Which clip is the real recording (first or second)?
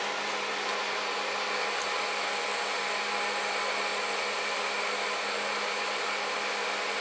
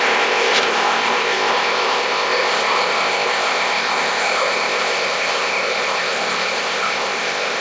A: first